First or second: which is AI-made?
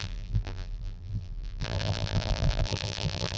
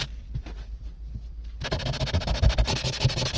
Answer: first